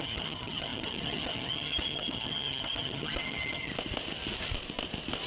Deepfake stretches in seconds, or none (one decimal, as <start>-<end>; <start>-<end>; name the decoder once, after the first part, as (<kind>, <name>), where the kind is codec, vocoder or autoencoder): 0.0-3.7 (vocoder, HiFi-GAN)